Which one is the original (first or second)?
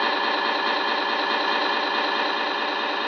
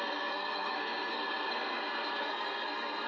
first